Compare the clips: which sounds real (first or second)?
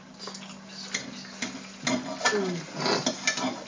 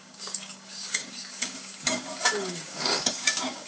first